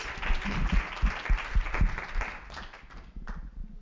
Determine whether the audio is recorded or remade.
recorded